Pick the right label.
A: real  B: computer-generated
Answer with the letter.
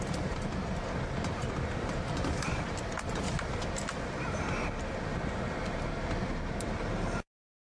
A